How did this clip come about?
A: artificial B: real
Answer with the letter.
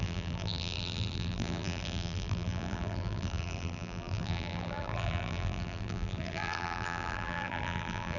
A